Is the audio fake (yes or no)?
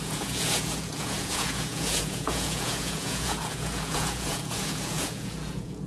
yes